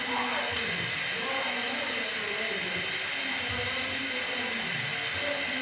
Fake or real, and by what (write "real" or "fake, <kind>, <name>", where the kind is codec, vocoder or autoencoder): real